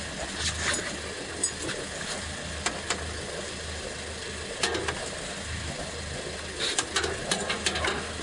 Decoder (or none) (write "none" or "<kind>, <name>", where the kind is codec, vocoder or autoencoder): none